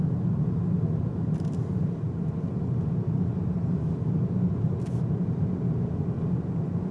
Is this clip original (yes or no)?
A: yes